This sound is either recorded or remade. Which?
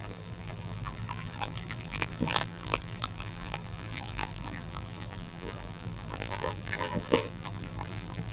remade